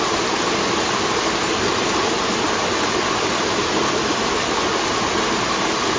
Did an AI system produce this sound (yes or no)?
no